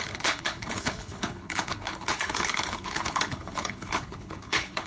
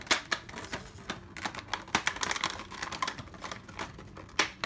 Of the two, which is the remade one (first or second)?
first